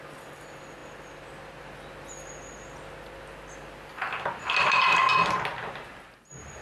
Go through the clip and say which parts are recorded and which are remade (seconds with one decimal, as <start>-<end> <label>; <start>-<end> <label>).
0.0-6.6 recorded